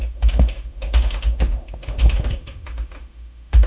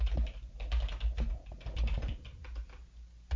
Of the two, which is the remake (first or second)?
first